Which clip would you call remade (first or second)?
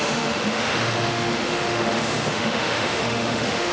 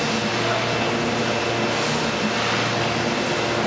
first